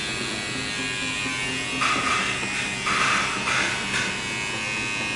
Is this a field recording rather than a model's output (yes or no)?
yes